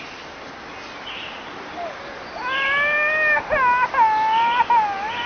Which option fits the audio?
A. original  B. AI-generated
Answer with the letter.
A